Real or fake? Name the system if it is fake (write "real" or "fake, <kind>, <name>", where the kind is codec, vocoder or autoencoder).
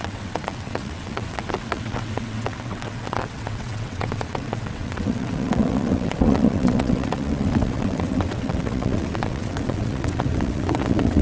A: fake, vocoder, WaveNeXt